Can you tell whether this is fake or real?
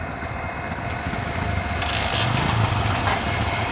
real